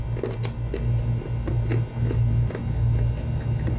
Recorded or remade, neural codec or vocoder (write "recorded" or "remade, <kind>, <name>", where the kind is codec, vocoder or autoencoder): recorded